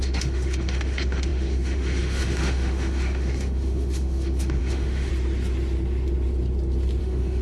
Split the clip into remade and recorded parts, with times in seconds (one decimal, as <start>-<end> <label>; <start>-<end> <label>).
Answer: 0.0-5.1 remade; 5.1-7.0 recorded; 7.0-7.4 remade